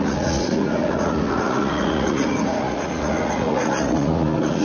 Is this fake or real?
fake